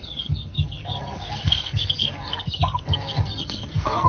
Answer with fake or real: fake